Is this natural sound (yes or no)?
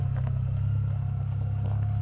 yes